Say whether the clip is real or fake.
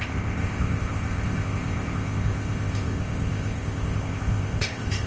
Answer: fake